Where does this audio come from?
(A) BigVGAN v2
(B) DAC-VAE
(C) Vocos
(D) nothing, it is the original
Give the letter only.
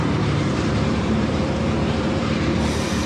A